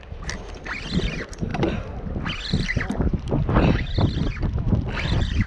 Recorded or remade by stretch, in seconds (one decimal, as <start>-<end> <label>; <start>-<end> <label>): 0.0-5.5 recorded